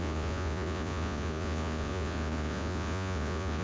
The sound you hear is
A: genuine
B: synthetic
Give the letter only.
B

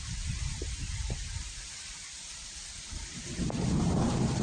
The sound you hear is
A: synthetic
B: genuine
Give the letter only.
A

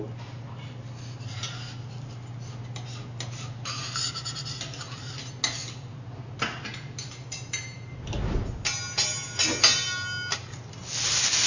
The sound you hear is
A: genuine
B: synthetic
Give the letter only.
A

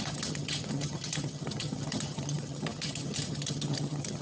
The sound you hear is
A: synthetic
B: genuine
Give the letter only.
A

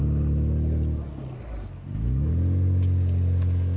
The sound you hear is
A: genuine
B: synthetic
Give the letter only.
A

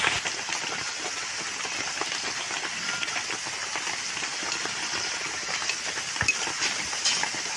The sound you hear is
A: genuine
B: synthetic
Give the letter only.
A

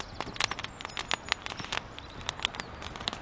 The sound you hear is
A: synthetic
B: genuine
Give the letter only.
B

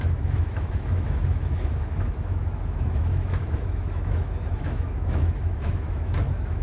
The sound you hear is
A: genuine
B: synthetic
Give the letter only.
B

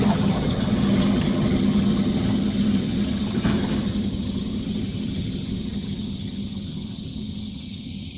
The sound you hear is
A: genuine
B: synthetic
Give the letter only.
B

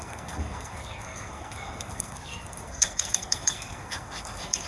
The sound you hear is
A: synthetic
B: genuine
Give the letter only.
A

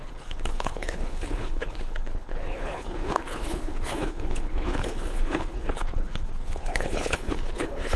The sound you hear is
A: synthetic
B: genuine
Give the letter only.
A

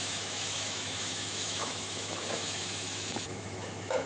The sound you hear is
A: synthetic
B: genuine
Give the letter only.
A